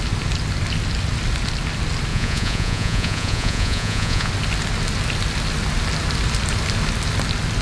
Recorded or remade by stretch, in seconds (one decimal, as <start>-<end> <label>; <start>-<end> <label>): 0.0-2.1 recorded; 2.1-4.3 remade; 4.3-7.6 recorded